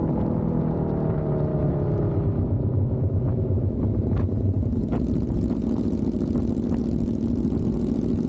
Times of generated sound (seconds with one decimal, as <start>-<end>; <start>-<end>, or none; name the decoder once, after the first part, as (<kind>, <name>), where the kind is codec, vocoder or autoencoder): 1.5-3.8 (autoencoder, DAC-VAE)